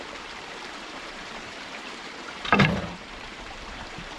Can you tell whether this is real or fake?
fake